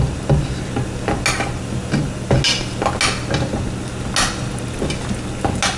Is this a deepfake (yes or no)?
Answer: no